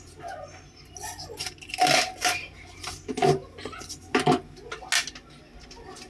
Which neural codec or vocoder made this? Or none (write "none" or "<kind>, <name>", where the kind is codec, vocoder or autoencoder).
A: none